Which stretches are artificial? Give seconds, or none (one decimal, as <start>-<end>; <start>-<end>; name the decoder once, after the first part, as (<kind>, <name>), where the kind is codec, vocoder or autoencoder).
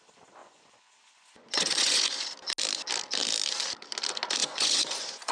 0.4-2.1 (vocoder, Vocos); 4.4-5.3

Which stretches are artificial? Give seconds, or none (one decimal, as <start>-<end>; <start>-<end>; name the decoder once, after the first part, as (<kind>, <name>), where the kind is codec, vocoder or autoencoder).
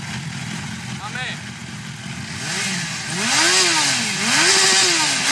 none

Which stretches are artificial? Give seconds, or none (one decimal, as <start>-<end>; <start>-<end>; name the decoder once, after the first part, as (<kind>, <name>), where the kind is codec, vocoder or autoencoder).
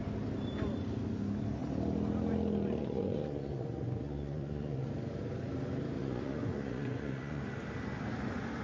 2.8-4.9 (vocoder, Vocos); 6.0-7.4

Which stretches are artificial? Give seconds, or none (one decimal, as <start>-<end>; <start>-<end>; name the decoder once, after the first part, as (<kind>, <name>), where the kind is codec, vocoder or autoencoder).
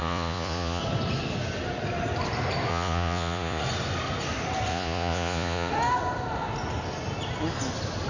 0.0-0.8 (vocoder, Vocos); 2.7-3.6; 4.7-5.7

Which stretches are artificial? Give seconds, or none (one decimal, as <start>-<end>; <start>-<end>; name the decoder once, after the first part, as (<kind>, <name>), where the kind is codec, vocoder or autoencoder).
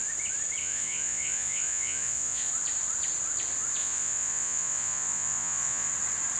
0.6-2.5 (vocoder, Vocos); 3.8-5.9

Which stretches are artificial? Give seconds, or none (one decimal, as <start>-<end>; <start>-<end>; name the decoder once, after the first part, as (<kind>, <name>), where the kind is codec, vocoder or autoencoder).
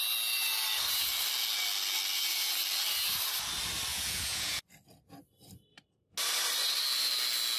3.9-4.6 (vocoder, Vocos)